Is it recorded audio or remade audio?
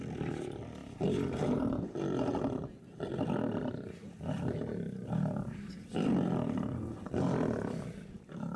recorded